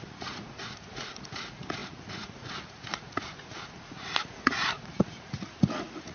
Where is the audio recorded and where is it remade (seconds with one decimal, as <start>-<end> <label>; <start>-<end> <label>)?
0.0-6.1 remade